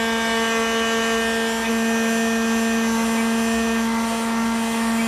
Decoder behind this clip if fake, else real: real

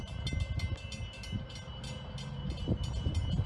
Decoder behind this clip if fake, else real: real